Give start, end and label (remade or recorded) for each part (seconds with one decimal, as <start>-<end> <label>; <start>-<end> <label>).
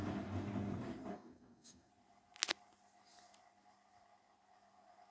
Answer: 0.0-1.1 recorded; 1.1-1.9 remade; 1.9-5.1 recorded